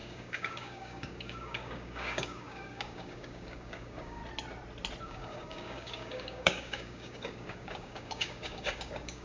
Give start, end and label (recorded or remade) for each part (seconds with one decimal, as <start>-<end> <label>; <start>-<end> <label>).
0.0-4.2 remade; 4.2-5.0 recorded; 5.0-9.2 remade